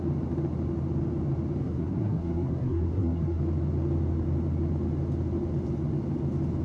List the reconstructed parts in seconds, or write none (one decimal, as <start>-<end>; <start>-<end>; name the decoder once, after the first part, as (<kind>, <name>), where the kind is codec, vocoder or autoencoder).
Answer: 1.6-3.4 (codec, SNAC)